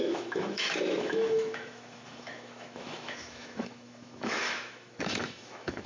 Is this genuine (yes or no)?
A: no